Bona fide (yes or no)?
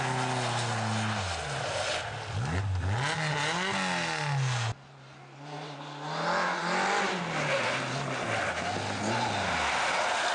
yes